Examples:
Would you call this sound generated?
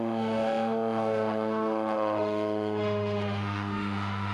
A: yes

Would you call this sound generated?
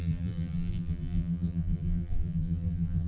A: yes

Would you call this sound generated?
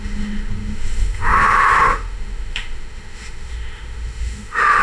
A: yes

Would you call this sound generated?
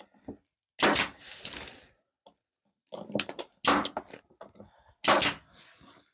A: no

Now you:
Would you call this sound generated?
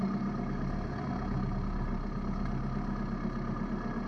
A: no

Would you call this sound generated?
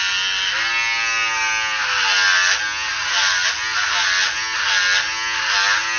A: no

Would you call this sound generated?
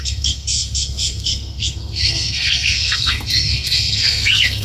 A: yes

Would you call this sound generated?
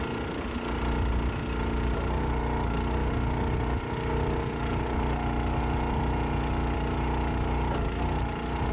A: no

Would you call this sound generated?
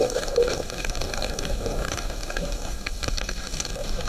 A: yes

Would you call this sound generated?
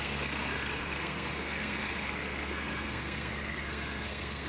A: yes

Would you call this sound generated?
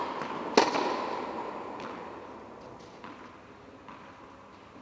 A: no